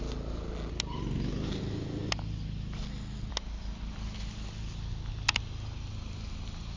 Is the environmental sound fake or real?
real